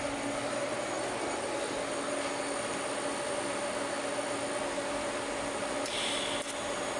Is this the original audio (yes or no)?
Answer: yes